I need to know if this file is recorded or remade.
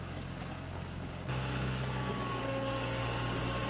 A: remade